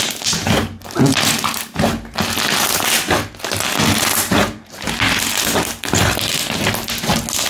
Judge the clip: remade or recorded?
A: recorded